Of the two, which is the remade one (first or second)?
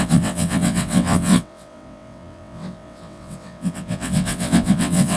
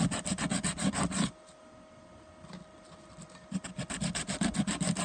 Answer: first